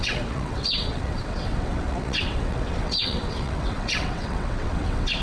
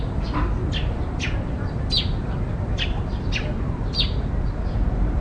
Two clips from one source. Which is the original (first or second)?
second